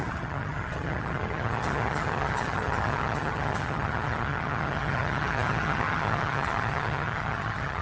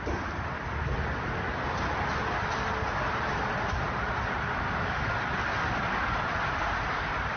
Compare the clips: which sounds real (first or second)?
second